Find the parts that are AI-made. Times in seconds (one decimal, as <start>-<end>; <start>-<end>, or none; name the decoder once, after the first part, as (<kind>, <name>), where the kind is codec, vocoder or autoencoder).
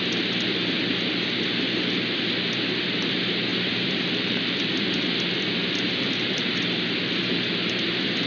3.5-6.6 (vocoder, BigVGAN v2)